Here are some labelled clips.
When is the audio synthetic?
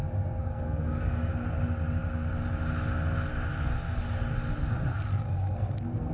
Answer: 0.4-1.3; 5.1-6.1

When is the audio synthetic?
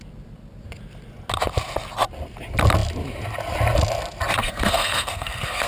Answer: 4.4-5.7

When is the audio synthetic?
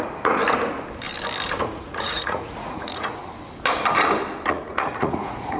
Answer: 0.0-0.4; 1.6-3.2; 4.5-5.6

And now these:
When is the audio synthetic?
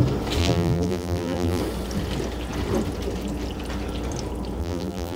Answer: 0.4-1.6; 4.6-5.2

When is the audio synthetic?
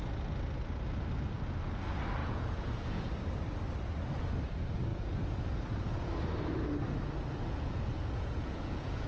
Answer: 2.2-3.1; 4.9-6.1; 7.4-9.1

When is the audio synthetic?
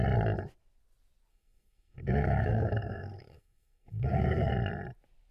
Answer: 1.3-4.5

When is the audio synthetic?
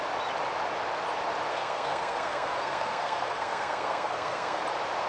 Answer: 1.5-4.6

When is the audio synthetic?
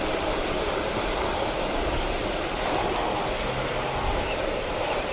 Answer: 0.0-2.2; 4.1-5.1